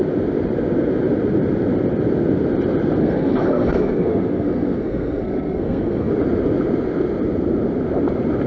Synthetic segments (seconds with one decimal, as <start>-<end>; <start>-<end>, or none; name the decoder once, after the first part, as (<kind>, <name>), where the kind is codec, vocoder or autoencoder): 3.0-6.1 (codec, SNAC)